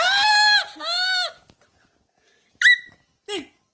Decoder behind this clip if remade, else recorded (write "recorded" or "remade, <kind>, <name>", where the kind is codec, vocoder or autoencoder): recorded